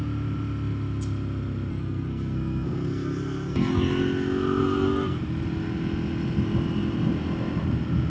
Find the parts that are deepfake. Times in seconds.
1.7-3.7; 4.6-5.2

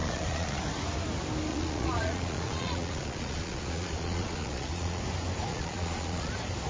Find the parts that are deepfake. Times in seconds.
0.0-0.6; 1.5-5.0; 5.5-6.3

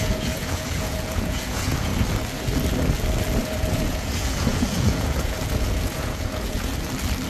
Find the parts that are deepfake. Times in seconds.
0.0-1.9; 3.4-6.7

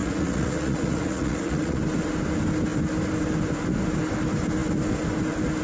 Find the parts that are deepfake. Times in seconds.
0.0-1.8

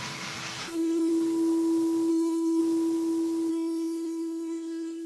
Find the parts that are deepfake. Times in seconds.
0.6-1.1; 2.1-2.6; 3.5-5.1